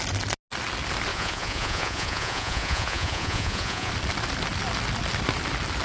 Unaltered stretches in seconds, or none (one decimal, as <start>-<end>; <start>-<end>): 0.0-1.1; 3.9-5.8